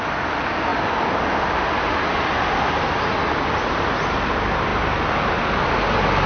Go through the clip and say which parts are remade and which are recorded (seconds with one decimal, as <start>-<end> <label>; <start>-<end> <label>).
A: 0.0-6.3 recorded